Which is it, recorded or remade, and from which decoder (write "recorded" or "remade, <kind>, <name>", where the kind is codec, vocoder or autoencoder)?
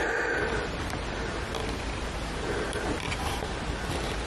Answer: recorded